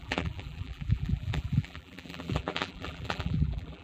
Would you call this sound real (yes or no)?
no